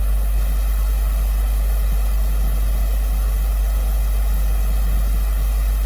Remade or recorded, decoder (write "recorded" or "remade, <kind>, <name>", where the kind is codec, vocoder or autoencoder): recorded